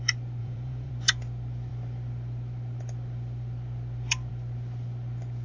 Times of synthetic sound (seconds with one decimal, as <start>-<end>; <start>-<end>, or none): 0.4-0.9